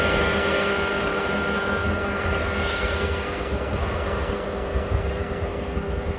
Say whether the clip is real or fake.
fake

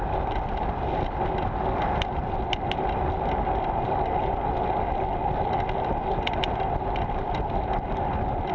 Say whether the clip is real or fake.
real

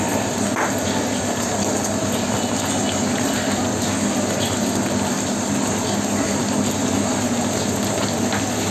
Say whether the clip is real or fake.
real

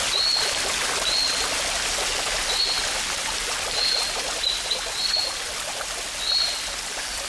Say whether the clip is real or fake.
real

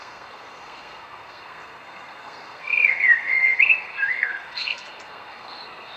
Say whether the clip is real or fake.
fake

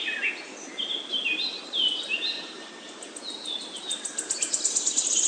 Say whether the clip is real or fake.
real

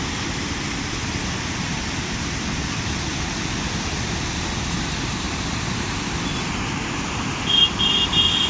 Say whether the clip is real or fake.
real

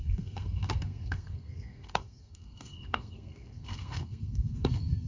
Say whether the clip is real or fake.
fake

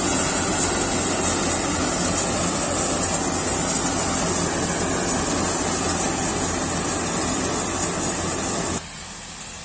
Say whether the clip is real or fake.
real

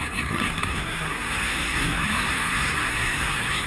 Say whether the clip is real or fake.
fake